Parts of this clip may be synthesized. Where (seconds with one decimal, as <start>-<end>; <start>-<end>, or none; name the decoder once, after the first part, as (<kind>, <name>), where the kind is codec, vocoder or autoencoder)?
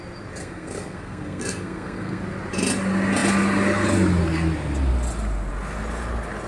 0.4-2.2 (codec, SNAC)